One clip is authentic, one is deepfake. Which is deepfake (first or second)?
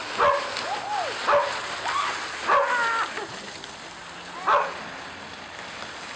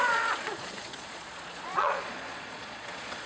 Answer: second